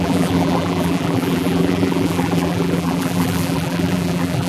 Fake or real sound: fake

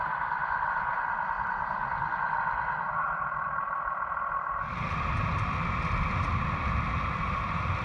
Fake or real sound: real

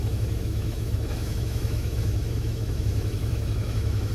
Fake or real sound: fake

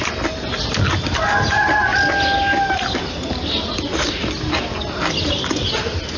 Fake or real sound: real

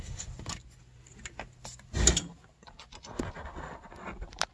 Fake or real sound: real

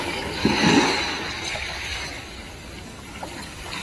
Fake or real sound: fake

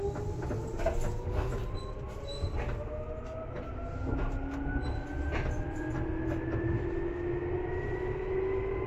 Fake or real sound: real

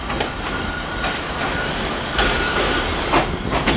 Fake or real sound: real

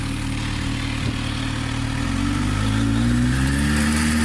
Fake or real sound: real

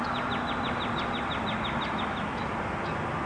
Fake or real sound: real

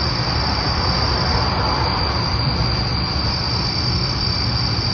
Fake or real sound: real